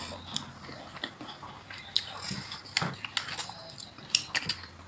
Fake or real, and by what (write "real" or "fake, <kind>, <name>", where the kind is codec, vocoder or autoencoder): real